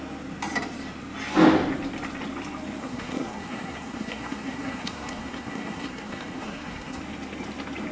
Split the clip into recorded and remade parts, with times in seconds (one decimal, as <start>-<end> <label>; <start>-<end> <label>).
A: 0.0-2.8 recorded; 2.8-7.0 remade; 7.0-7.9 recorded